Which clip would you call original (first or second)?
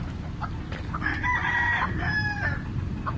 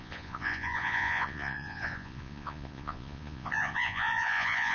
first